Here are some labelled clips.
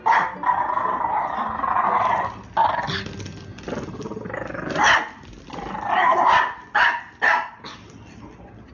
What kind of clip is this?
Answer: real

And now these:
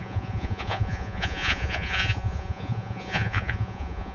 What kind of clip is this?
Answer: fake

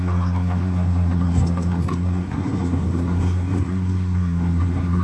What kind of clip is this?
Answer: fake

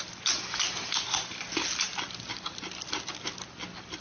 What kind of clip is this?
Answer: real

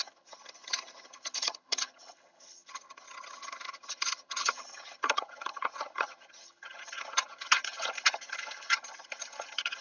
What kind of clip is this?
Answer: fake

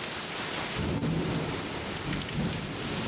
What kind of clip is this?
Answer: real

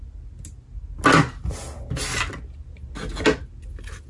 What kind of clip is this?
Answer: real